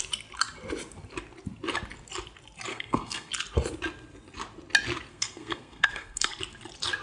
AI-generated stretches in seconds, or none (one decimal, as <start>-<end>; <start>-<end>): 2.7-3.3; 5.1-6.3